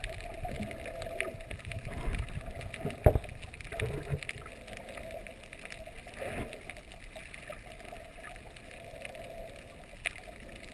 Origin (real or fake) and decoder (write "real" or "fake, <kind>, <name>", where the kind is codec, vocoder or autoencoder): real